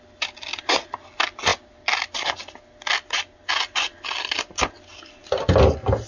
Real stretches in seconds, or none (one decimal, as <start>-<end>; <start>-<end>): 0.0-6.1